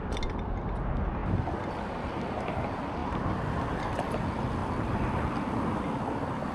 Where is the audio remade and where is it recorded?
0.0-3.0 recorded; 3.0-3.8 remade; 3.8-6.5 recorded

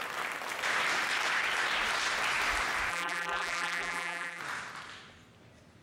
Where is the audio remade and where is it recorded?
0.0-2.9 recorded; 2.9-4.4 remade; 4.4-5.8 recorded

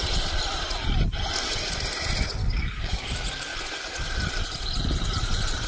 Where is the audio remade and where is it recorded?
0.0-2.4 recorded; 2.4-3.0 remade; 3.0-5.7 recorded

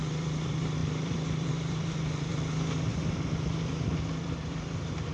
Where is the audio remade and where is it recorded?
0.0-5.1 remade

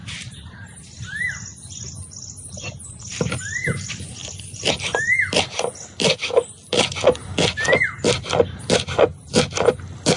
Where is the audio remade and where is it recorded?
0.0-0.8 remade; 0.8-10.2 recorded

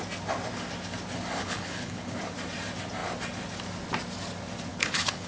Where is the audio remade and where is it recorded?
0.0-1.4 recorded; 1.4-2.2 remade; 2.2-4.7 recorded; 4.7-5.3 remade